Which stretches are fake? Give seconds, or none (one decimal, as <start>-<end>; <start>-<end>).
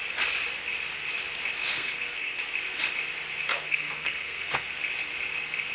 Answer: 1.6-2.4; 3.5-4.7